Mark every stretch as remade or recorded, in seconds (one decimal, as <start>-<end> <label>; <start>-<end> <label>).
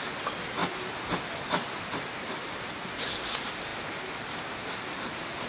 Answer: 0.0-1.6 recorded; 1.6-2.9 remade; 2.9-5.5 recorded